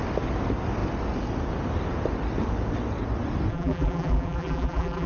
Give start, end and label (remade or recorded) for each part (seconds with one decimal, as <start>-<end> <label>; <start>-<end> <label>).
0.0-3.5 recorded; 3.5-5.1 remade